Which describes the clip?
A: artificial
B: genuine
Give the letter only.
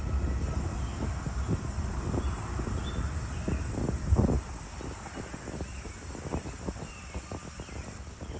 B